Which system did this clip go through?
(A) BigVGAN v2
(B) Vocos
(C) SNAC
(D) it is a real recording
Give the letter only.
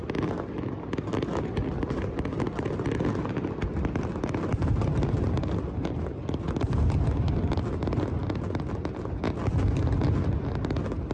D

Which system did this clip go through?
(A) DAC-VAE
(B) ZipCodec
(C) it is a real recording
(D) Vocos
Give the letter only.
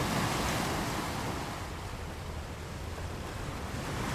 C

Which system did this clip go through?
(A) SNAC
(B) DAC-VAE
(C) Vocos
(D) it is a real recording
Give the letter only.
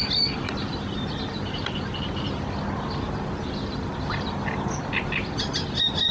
D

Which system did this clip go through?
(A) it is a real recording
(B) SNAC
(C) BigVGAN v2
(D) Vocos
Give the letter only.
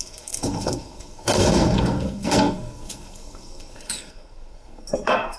B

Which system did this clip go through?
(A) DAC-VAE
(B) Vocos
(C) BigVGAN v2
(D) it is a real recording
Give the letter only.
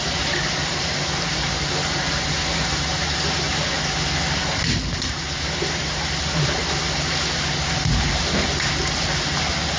D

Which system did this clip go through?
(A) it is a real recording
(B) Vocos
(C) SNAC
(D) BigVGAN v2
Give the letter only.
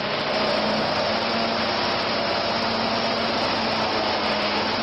A